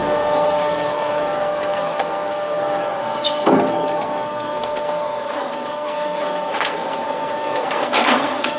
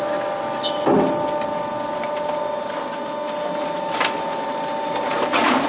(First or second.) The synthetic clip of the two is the first